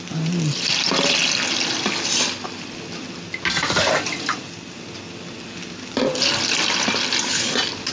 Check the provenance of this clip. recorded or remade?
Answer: recorded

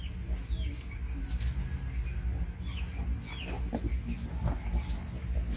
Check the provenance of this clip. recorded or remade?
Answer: recorded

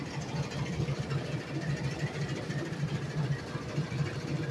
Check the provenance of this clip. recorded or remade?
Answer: remade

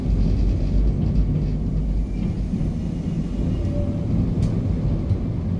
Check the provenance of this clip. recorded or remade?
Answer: recorded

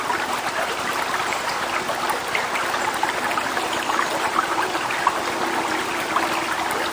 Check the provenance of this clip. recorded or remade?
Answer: recorded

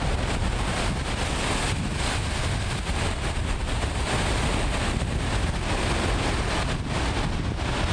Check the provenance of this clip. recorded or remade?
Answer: recorded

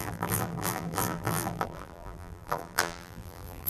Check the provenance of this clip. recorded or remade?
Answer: remade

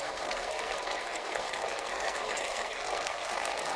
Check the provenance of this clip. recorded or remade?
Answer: remade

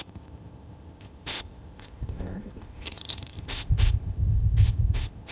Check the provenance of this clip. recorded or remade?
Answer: remade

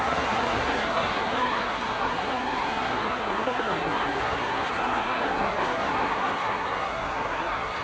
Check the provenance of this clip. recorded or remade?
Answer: remade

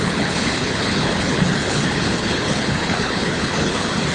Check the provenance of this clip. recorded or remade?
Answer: remade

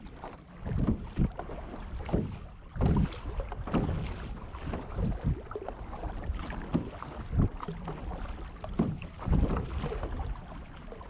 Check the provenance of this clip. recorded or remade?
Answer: recorded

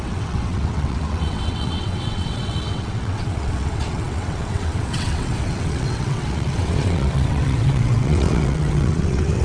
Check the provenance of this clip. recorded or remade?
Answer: remade